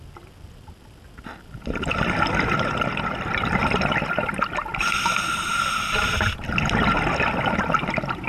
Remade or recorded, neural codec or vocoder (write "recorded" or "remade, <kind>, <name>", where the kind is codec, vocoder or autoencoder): recorded